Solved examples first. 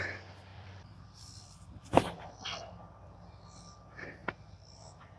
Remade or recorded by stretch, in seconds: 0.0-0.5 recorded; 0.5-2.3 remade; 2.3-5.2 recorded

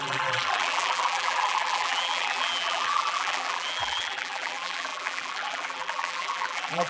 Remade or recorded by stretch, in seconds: 0.0-6.9 remade

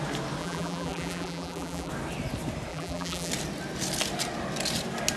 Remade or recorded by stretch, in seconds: 0.0-0.4 recorded; 0.4-1.9 remade; 1.9-2.7 recorded; 2.7-3.3 remade; 3.3-5.2 recorded

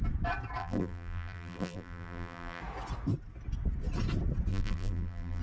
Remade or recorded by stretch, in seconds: 0.0-0.6 recorded; 0.6-2.6 remade; 2.6-4.5 recorded; 4.5-5.4 remade